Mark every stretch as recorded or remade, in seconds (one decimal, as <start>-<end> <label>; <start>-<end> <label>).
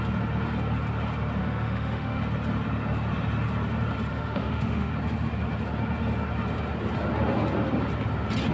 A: 0.0-1.4 recorded; 1.4-2.2 remade; 2.2-4.1 recorded; 4.1-4.9 remade; 4.9-8.5 recorded